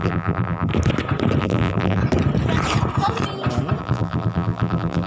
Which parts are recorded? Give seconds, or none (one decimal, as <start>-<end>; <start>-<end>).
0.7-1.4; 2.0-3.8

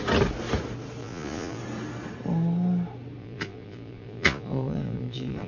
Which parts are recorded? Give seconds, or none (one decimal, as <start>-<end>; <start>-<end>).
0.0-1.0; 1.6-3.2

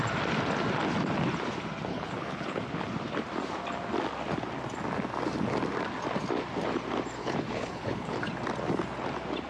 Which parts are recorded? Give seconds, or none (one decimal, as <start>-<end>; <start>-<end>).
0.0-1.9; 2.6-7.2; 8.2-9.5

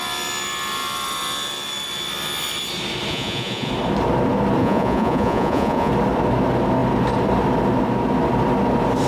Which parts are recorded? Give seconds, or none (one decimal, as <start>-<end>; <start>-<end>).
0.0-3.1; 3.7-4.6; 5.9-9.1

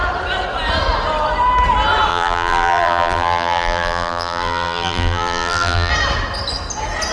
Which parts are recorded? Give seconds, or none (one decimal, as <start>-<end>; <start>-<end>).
0.0-2.1; 5.9-7.1